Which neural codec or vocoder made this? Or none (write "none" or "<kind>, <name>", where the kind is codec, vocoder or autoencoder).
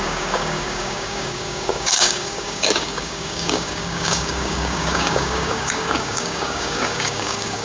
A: codec, DAC